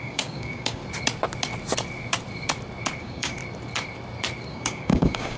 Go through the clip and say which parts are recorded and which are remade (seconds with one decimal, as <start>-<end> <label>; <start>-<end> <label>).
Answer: 0.0-0.8 remade; 0.8-3.0 recorded; 3.0-3.4 remade; 3.4-4.5 recorded; 4.5-5.4 remade